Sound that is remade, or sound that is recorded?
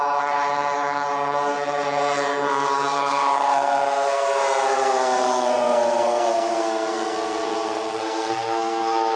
remade